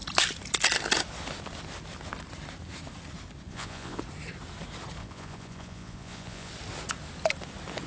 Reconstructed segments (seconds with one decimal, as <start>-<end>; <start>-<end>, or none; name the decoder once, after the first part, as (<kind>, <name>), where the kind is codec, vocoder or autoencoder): 3.5-4.0 (vocoder, Vocos); 5.0-6.5

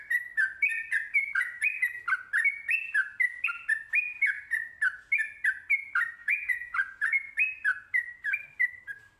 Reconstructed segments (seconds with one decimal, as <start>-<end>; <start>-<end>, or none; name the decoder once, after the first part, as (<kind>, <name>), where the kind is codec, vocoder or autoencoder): 6.2-7.3 (vocoder, Vocos)

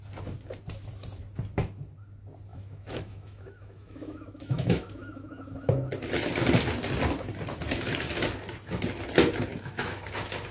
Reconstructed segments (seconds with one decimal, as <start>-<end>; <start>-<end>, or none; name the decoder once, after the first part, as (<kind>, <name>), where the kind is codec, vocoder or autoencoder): 2.5-5.7 (autoencoder, DAC-VAE); 9.5-10.0

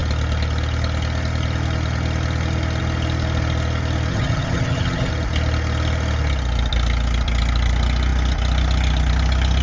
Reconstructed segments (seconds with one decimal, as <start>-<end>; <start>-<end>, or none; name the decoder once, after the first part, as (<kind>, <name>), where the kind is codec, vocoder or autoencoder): 4.1-5.1 (vocoder, HiFi-GAN)

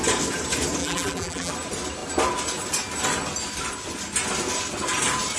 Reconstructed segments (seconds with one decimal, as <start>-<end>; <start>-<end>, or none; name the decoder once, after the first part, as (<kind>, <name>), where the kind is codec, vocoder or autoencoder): 0.8-1.5 (vocoder, BigVGAN v2)

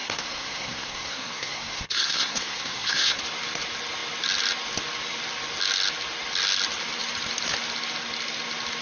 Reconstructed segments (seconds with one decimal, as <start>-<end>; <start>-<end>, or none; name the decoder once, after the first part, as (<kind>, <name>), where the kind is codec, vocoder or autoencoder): 0.0-3.2 (codec, SNAC)